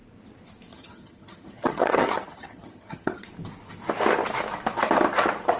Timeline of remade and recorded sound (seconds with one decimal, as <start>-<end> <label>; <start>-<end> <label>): 0.0-0.7 recorded; 0.7-3.3 remade; 3.3-5.6 recorded